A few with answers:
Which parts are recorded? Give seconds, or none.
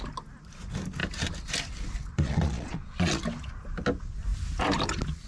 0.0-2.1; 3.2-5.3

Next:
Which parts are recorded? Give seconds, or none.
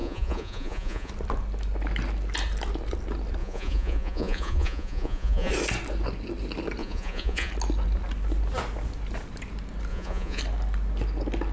1.1-3.4; 5.5-6.8; 7.5-9.9; 10.4-11.5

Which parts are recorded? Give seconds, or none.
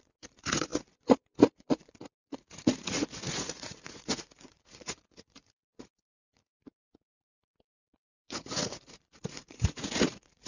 none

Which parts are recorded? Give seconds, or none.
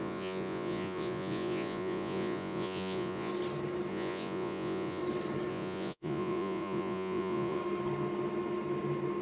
3.3-3.9; 5.0-5.5; 7.6-9.2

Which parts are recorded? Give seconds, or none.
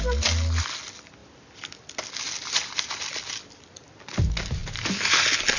0.0-5.6